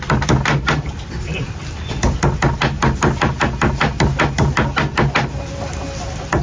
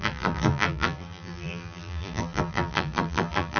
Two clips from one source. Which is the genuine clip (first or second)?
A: first